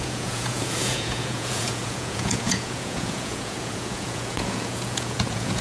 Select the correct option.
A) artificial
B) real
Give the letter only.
A